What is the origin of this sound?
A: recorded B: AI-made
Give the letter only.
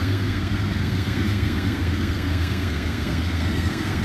B